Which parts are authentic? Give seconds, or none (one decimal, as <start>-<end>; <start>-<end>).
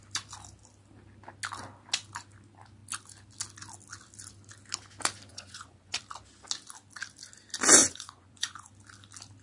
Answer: 0.0-5.3; 6.0-7.8; 8.7-9.4